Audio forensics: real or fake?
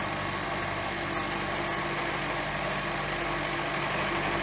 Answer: real